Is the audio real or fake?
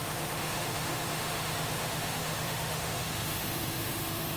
fake